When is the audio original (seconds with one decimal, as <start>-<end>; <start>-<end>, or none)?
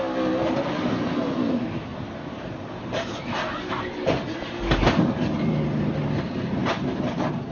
0.0-7.5